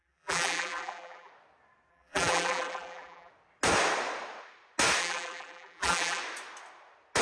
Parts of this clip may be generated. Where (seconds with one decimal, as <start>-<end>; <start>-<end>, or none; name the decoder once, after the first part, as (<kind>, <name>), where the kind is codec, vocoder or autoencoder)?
0.0-1.3 (vocoder, BigVGAN v2); 1.9-3.3; 5.0-6.2